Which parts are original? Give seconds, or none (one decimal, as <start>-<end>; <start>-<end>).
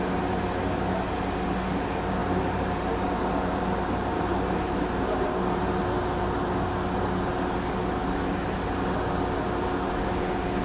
0.0-4.1; 5.8-10.6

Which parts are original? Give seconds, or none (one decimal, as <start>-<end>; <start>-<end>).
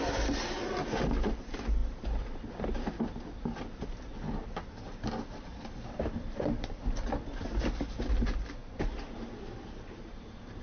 0.0-5.5; 7.6-10.6